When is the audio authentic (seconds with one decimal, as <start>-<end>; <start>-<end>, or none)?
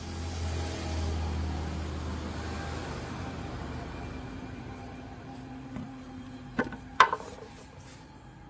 0.0-2.8; 7.6-8.5